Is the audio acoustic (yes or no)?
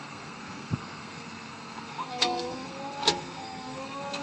no